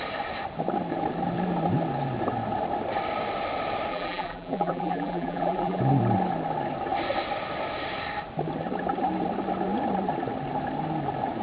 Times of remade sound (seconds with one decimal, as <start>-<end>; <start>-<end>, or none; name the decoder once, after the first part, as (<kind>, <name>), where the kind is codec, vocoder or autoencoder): 3.9-5.8 (vocoder, BigVGAN v2)